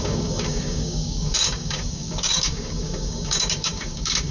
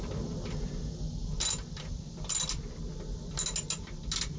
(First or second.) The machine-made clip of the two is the first